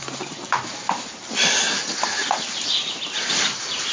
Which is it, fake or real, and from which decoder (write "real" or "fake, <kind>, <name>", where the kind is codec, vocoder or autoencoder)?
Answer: real